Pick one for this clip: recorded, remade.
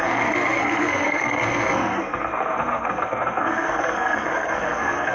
remade